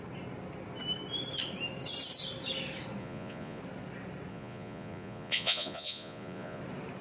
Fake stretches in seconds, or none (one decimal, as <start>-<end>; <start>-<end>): 3.0-3.6; 4.3-6.6

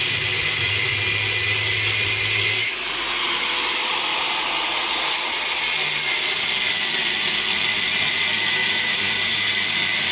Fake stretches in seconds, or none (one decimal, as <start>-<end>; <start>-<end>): 4.1-5.0; 8.6-9.5

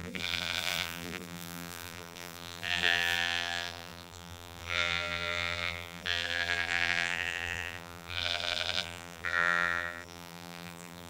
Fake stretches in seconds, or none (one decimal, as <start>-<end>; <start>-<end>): 0.0-11.1

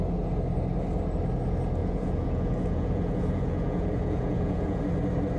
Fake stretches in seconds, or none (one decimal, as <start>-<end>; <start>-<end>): 1.8-4.8

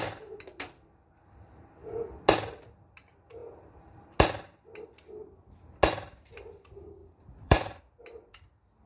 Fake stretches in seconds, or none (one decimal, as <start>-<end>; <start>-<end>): 7.0-7.8

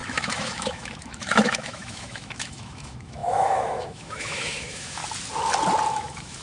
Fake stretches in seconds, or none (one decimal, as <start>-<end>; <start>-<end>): 0.0-5.0; 5.9-6.4

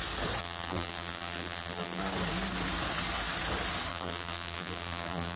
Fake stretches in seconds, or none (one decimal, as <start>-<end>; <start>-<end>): 0.4-2.0; 3.9-5.4